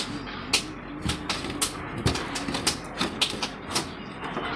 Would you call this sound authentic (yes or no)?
yes